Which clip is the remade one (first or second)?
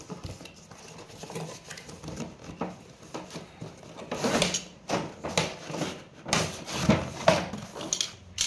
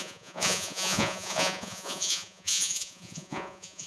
second